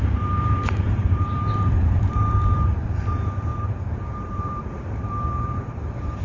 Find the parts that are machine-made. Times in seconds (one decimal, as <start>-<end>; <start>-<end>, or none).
0.0-6.2